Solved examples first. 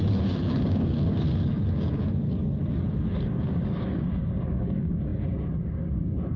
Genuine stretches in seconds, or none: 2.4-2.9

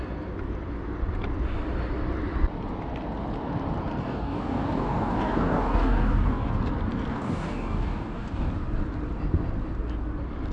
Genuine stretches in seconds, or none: 0.0-4.0; 6.6-7.1; 8.5-10.5